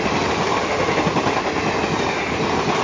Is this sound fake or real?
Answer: real